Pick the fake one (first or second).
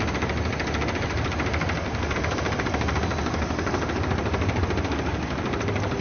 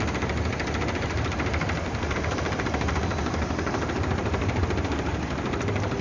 second